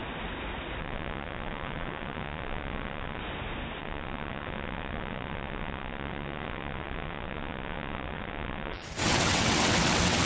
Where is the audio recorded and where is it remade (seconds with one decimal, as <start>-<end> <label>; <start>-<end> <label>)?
0.0-0.8 recorded; 0.8-3.2 remade; 3.2-3.8 recorded; 3.8-10.3 remade